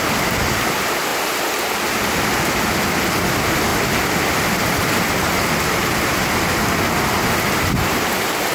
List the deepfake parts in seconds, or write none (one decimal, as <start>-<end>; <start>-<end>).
none